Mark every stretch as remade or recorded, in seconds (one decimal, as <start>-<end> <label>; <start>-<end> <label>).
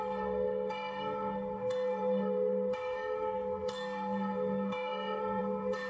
0.0-5.9 remade